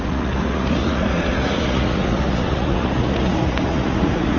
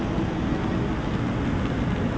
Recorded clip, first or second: second